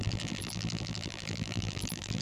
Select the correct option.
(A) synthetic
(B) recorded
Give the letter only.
A